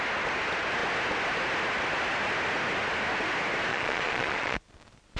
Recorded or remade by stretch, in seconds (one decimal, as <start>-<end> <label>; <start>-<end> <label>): 0.0-3.7 recorded; 3.7-4.6 remade; 4.6-5.2 recorded